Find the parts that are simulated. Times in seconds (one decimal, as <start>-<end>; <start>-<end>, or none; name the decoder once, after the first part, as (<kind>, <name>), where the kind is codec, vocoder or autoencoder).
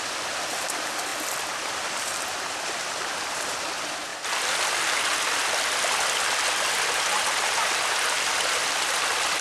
none